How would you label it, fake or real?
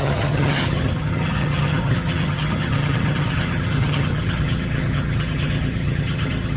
fake